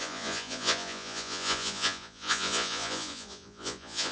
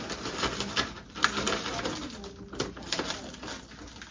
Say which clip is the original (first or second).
second